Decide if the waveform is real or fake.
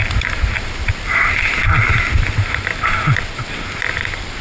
real